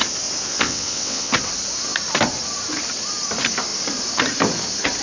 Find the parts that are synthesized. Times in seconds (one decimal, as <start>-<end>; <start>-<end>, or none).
0.5-1.3